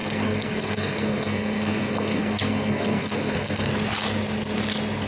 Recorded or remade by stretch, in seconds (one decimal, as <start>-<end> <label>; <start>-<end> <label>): 0.0-3.7 remade; 3.7-5.1 recorded